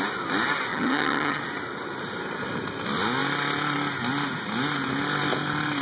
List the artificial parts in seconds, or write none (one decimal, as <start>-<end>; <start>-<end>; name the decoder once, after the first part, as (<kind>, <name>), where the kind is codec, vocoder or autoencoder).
0.7-1.4 (vocoder, HiFi-GAN)